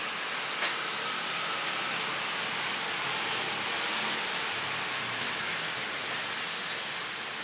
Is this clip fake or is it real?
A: real